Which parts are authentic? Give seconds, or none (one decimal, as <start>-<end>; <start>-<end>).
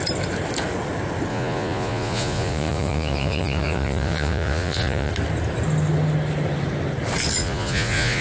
0.0-1.3; 5.1-7.4